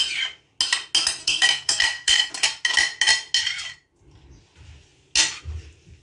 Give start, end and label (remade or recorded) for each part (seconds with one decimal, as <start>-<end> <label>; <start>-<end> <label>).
0.0-1.2 recorded; 1.2-2.3 remade; 2.3-6.0 recorded